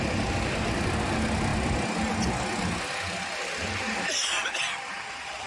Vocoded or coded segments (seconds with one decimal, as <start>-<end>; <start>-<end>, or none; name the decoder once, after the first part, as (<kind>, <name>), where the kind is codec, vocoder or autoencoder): none